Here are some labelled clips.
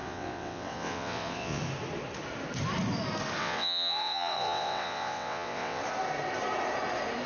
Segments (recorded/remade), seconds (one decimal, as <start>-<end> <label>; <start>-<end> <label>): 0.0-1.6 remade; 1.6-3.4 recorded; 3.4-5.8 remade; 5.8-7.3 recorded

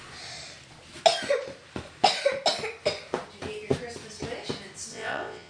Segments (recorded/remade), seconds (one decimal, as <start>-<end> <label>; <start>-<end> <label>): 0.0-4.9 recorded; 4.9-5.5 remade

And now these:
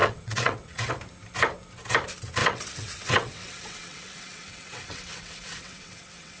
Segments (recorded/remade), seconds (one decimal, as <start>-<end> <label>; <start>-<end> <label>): 0.0-0.9 remade; 0.9-2.4 recorded; 2.4-6.4 remade